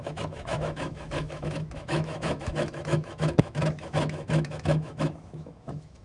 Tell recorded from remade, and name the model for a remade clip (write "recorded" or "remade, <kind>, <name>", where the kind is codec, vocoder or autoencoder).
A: remade, autoencoder, DAC-VAE